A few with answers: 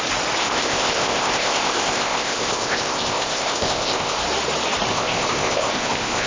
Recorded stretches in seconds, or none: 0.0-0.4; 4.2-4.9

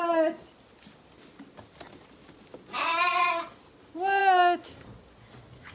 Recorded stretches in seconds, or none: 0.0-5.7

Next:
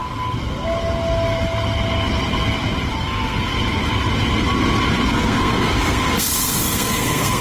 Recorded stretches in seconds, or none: 0.0-3.0; 3.5-5.1